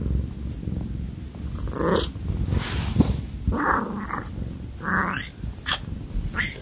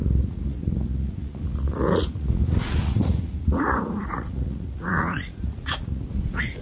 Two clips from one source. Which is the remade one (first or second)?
second